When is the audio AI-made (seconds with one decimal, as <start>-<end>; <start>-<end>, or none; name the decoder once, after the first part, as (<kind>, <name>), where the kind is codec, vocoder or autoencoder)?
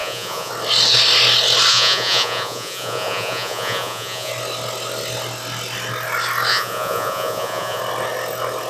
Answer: 0.0-0.5 (vocoder, Vocos); 1.7-4.3; 6.5-7.8